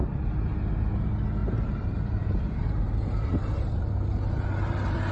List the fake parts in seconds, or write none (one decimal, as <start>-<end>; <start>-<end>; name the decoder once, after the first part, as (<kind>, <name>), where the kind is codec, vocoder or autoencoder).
1.4-3.8 (vocoder, BigVGAN v2)